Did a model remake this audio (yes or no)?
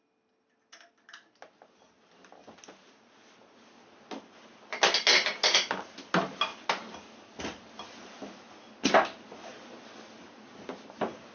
no